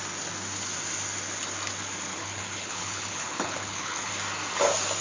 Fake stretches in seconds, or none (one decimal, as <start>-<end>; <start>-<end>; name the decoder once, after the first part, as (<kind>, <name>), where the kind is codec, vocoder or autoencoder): 2.1-4.1 (codec, HILCodec)